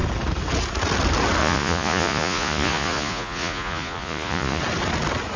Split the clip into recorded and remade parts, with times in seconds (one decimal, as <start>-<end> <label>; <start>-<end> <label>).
0.0-1.4 recorded; 1.4-4.6 remade; 4.6-5.4 recorded